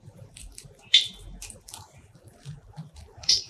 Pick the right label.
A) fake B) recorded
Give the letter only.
A